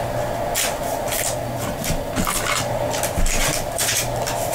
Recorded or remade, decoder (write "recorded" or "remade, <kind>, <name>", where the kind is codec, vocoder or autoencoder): recorded